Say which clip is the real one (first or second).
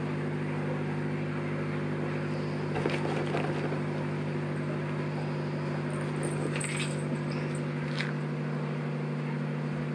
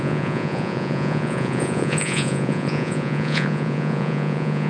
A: first